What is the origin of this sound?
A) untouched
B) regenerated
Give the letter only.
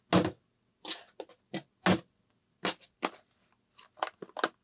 A